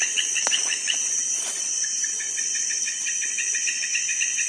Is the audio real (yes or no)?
no